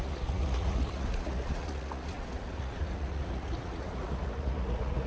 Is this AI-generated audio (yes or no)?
yes